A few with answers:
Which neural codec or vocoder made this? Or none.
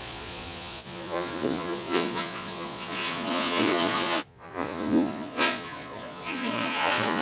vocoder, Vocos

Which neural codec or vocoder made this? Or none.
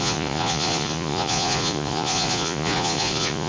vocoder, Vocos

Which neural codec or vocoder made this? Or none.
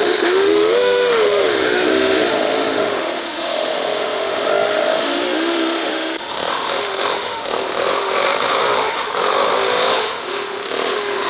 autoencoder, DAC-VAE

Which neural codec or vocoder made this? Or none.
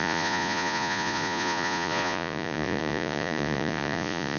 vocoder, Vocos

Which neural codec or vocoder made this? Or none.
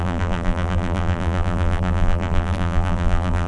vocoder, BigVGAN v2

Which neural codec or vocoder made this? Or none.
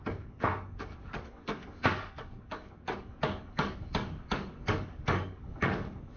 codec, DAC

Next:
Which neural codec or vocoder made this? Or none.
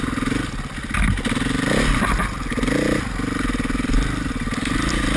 none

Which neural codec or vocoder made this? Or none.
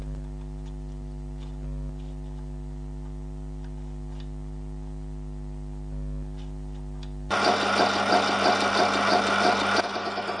none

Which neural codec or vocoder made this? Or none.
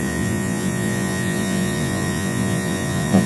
vocoder, Vocos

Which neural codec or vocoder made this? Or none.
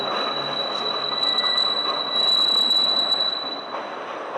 none